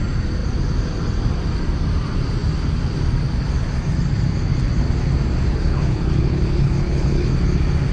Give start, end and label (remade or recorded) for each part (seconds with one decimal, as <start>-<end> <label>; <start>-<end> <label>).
0.0-5.5 recorded; 5.5-7.3 remade; 7.3-7.9 recorded